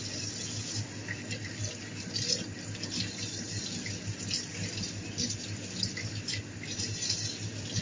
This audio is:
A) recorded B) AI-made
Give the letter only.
A